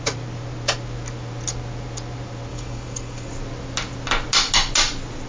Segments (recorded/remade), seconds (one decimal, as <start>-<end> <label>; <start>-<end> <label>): 0.0-2.5 recorded; 2.5-3.3 remade; 3.3-5.3 recorded